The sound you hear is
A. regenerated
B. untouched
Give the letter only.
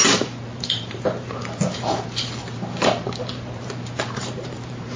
A